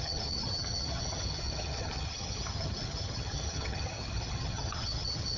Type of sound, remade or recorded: remade